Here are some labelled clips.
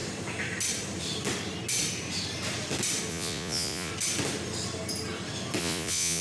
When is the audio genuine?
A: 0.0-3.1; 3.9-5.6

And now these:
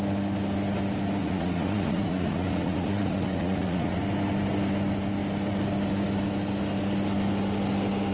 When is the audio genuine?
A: 0.0-1.2; 4.0-8.1

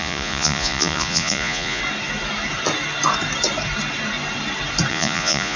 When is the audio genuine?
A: 1.8-4.9

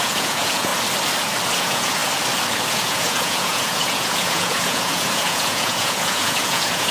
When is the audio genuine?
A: 0.7-1.6; 2.0-2.7